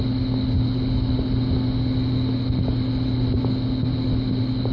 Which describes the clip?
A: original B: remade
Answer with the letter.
A